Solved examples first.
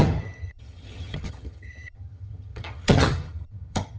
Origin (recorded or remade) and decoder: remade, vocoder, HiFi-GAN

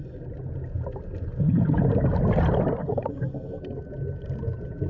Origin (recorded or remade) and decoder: recorded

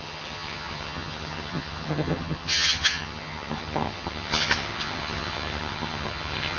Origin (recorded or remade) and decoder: remade, vocoder, HiFi-GAN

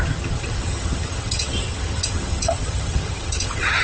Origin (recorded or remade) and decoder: remade, vocoder, HiFi-GAN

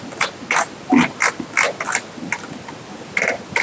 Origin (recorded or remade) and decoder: recorded